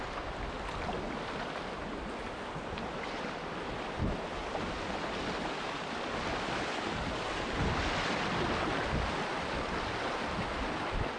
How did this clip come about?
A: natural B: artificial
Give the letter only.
A